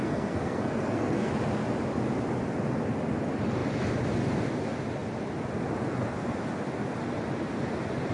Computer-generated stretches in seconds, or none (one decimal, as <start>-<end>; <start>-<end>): 0.0-1.3